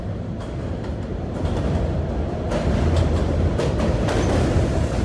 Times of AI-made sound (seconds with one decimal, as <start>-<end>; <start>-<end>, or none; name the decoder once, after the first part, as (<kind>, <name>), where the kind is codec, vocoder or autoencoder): 1.1-1.7 (vocoder, BigVGAN v2)